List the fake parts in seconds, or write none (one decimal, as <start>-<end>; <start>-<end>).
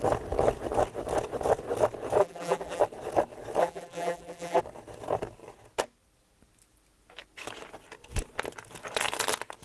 2.2-2.8; 3.6-4.6